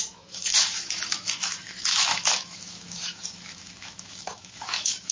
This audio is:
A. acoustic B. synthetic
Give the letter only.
B